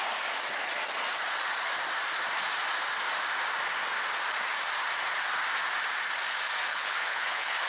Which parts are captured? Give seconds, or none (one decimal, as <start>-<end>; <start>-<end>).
0.0-6.7